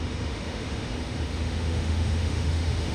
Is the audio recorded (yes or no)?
no